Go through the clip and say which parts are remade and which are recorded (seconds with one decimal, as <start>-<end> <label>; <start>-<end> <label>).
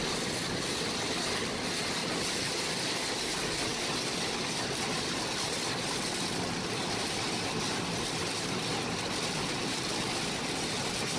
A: 0.0-2.0 recorded; 2.0-2.9 remade; 2.9-11.2 recorded